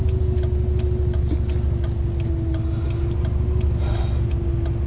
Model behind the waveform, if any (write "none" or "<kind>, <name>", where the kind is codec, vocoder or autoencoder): none